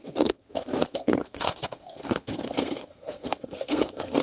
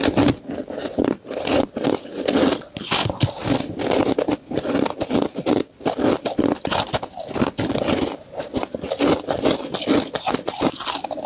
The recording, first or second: second